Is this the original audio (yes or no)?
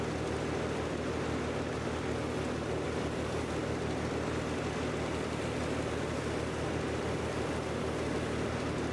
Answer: yes